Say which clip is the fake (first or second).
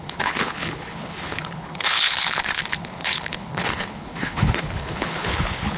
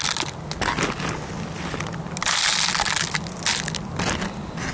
first